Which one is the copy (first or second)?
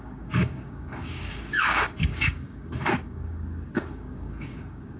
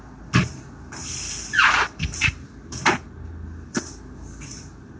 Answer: first